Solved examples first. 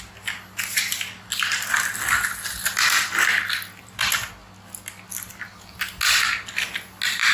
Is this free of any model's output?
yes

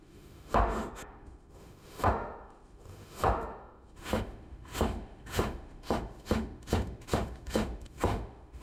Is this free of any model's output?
no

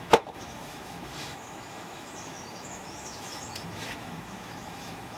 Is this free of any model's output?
no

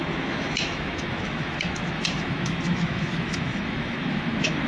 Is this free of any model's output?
no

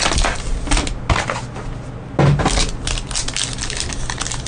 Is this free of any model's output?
yes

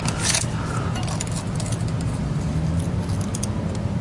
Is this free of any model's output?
yes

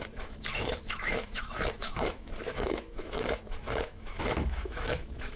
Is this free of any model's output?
no